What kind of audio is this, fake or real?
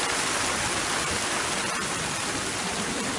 real